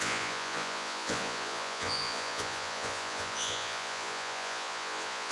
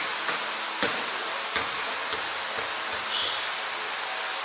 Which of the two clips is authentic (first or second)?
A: second